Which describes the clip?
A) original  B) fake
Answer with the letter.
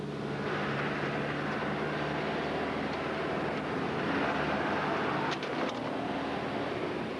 A